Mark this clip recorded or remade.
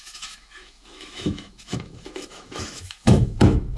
remade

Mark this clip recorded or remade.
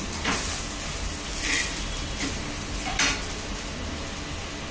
recorded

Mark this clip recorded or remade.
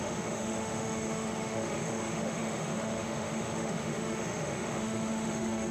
remade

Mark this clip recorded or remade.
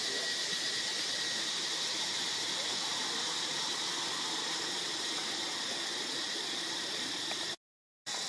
recorded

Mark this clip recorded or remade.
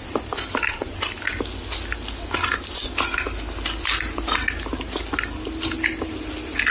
recorded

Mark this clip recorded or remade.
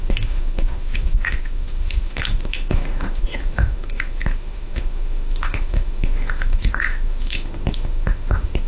remade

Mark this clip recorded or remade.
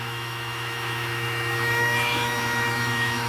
remade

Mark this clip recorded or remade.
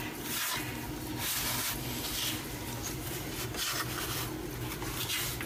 recorded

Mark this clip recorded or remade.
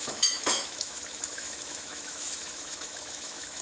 remade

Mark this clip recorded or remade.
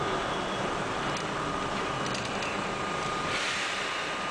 recorded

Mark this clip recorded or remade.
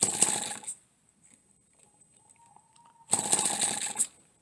recorded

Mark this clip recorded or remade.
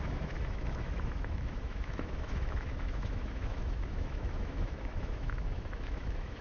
remade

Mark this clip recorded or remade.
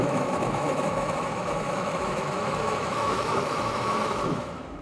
remade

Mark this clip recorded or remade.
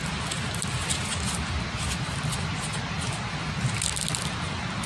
recorded